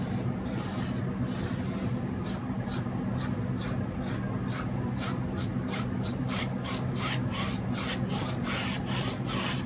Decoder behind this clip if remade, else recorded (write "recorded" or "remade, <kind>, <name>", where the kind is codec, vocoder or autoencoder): recorded